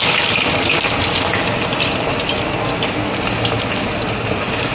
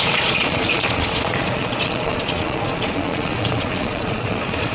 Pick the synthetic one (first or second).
second